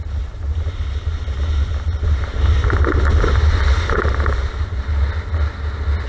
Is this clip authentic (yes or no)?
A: yes